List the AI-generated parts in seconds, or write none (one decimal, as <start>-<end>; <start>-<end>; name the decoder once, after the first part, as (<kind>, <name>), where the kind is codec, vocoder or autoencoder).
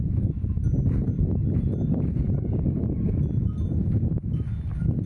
none